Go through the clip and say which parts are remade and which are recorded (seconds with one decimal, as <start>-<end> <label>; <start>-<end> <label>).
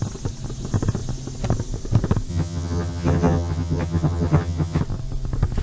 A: 0.0-2.3 recorded; 2.3-4.8 remade; 4.8-5.6 recorded